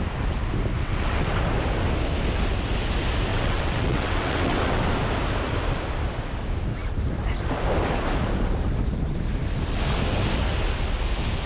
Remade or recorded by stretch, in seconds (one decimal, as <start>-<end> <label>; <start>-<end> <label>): 0.0-0.8 recorded; 0.8-1.3 remade; 1.3-3.3 recorded; 3.3-4.8 remade; 4.8-11.5 recorded